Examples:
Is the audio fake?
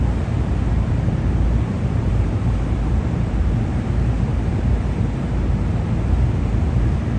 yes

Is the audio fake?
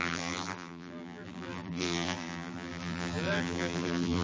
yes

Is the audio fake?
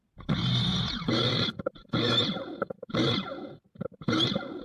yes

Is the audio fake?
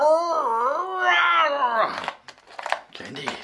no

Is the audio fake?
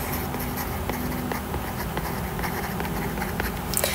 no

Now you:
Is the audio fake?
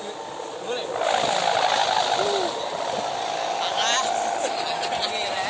no